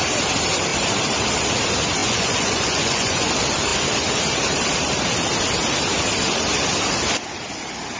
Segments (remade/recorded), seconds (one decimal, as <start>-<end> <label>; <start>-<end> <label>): 0.0-2.0 recorded; 2.0-3.3 remade; 3.3-8.0 recorded